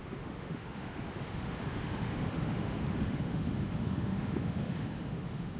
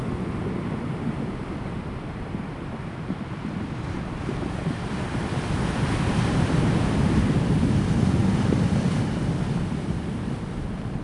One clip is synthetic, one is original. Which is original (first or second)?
second